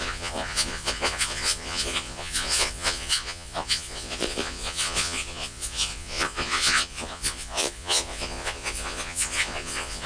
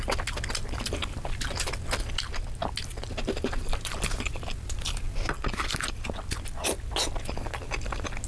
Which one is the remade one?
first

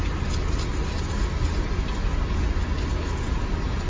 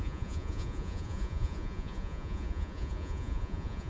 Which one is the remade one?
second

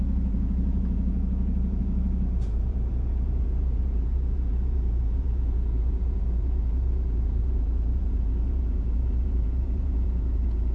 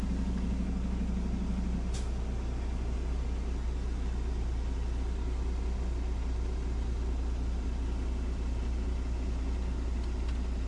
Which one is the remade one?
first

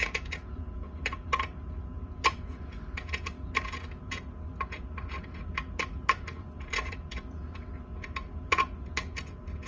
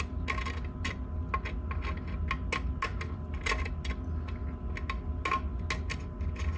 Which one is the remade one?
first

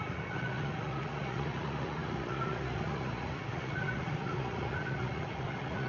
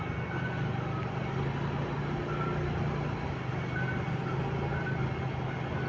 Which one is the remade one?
first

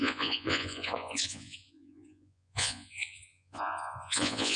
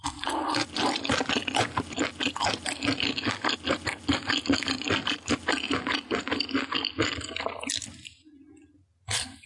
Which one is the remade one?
first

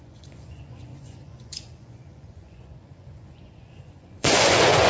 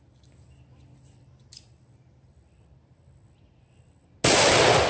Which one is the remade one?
first